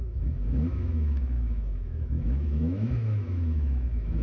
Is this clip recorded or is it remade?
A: remade